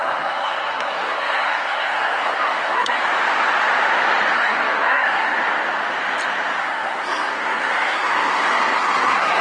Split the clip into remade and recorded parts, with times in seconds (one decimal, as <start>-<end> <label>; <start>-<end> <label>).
0.0-3.0 remade; 3.0-4.3 recorded; 4.3-5.4 remade; 5.4-6.6 recorded; 6.6-9.4 remade